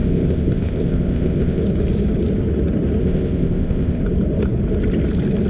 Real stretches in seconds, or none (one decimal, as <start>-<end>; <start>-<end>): 1.6-3.0; 4.0-5.5